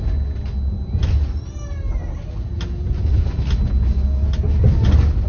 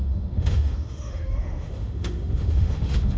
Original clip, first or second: first